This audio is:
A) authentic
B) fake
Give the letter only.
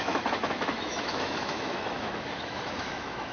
B